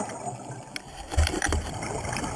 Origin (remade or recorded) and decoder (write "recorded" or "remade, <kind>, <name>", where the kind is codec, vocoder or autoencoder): recorded